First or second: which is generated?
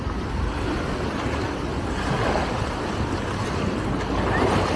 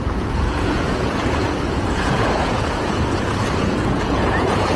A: second